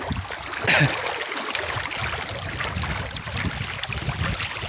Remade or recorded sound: recorded